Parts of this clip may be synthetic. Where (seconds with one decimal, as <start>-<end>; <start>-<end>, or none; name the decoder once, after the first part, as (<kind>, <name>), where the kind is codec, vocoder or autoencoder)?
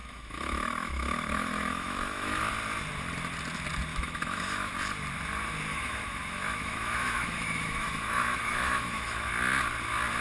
0.0-2.5 (autoencoder, DAC-VAE); 3.9-4.7; 5.7-9.3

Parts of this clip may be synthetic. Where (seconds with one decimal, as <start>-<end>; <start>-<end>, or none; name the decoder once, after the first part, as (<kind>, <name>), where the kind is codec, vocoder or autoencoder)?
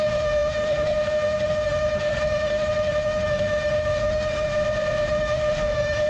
0.0-4.5 (autoencoder, DAC-VAE); 5.1-6.1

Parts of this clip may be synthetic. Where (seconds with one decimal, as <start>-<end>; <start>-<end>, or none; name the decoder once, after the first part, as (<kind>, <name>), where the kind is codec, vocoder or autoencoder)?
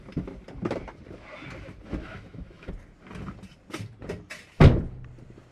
2.0-2.7 (autoencoder, DAC-VAE)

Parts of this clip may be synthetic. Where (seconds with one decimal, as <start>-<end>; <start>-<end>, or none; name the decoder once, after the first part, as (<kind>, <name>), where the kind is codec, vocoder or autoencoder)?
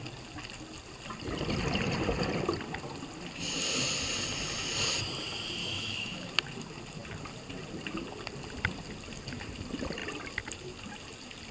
5.6-6.3 (autoencoder, DAC-VAE)